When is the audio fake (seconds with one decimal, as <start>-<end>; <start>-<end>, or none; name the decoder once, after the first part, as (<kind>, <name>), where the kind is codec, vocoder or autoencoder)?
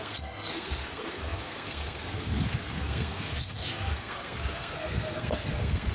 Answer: 0.0-5.9 (codec, SNAC)